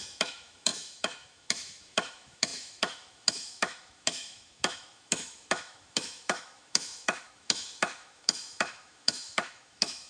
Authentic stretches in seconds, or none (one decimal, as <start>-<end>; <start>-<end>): none